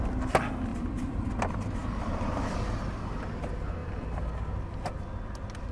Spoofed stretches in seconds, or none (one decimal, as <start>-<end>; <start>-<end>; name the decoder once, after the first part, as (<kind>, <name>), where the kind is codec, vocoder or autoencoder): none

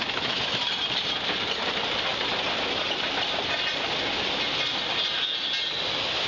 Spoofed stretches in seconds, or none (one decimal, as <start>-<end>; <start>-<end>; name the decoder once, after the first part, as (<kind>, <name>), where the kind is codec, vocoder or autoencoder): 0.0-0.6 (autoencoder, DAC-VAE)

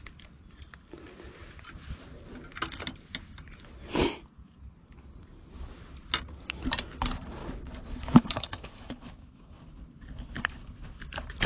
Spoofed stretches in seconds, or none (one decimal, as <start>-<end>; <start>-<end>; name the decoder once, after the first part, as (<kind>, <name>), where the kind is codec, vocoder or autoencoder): 7.4-9.5 (autoencoder, DAC-VAE)

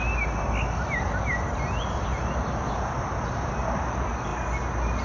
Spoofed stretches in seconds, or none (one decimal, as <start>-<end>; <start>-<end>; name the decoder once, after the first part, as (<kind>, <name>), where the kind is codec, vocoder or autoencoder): none